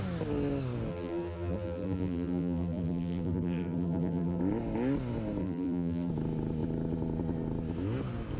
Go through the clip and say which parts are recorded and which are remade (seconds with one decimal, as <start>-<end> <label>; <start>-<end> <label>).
0.0-0.9 recorded; 0.9-4.4 remade; 4.4-5.4 recorded; 5.4-6.1 remade; 6.1-8.4 recorded